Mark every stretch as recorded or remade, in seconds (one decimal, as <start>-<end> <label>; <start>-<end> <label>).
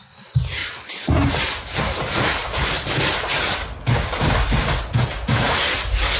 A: 0.0-6.2 recorded